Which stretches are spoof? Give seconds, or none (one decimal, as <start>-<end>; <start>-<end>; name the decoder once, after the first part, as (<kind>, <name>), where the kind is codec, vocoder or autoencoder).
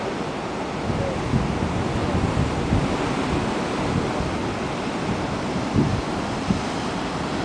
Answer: none